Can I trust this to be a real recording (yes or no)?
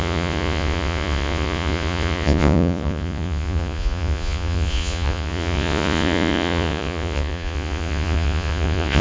no